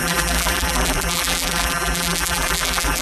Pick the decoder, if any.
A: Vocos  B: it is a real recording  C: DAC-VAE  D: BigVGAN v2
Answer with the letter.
D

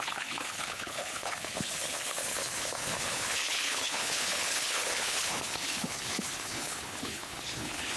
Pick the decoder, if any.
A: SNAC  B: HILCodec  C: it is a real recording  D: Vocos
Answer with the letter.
B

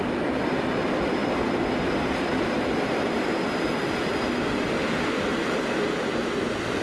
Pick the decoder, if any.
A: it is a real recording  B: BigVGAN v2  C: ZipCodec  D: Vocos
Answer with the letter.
A